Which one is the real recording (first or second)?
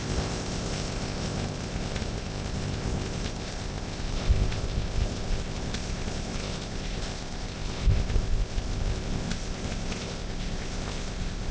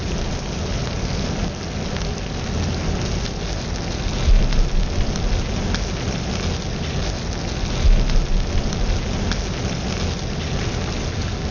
second